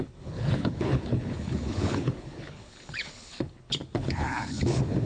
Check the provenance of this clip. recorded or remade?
remade